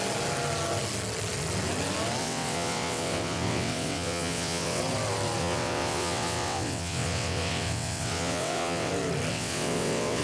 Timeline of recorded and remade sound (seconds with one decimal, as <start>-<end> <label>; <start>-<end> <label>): 0.0-2.2 recorded; 2.2-4.8 remade; 4.8-5.4 recorded; 5.4-8.9 remade; 8.9-9.3 recorded; 9.3-10.2 remade